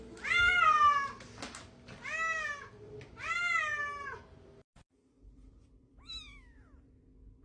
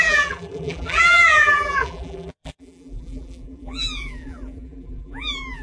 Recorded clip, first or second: first